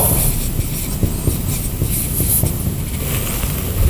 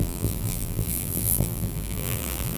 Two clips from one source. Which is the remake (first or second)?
second